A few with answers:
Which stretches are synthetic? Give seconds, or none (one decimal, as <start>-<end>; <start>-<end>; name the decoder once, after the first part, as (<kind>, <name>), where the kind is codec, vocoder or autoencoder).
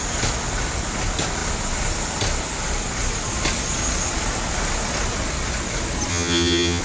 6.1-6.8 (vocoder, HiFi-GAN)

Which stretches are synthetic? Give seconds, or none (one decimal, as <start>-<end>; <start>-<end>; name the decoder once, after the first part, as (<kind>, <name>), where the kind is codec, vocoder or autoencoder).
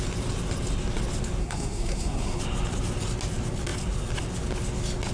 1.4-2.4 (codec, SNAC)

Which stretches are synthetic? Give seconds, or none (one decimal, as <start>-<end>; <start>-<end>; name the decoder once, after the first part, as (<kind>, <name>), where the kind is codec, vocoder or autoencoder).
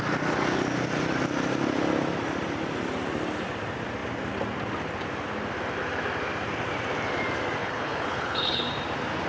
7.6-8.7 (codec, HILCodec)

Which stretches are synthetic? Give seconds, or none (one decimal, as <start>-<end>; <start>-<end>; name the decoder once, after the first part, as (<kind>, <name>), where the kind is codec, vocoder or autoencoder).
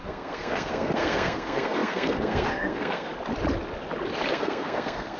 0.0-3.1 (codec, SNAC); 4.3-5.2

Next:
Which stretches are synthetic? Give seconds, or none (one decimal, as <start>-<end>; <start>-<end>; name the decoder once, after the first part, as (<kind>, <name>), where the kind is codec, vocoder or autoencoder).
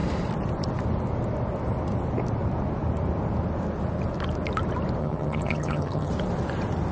5.0-6.1 (vocoder, HiFi-GAN)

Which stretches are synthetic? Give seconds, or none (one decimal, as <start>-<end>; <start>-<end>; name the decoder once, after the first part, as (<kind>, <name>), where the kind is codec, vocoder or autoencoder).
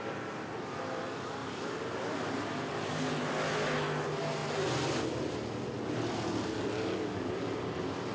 1.4-3.1 (vocoder, BigVGAN v2)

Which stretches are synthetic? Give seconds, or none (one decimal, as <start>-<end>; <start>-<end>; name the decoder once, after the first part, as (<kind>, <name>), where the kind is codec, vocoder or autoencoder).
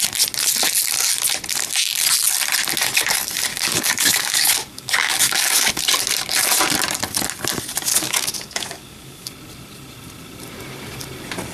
3.5-5.8 (codec, DAC); 7.9-9.3